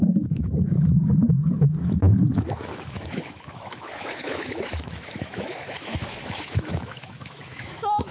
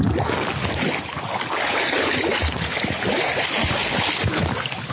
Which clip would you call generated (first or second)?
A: first